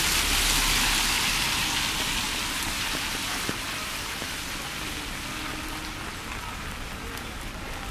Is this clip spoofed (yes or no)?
no